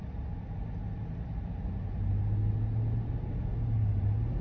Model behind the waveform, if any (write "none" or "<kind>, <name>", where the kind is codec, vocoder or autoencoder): none